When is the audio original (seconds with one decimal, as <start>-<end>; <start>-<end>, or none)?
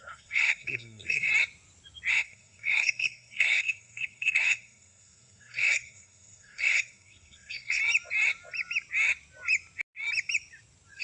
1.3-2.1; 7.8-11.0